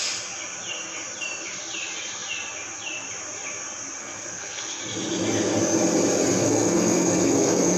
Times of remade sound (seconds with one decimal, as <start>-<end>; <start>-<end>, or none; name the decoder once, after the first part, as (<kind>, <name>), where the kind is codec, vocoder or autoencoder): 4.0-4.8 (codec, SNAC); 6.4-7.8